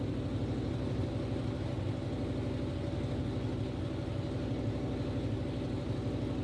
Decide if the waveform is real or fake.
real